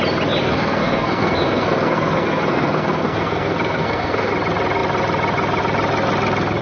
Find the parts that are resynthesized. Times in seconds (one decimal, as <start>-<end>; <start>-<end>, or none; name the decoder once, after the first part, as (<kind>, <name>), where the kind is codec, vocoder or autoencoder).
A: 0.4-4.3 (codec, SNAC)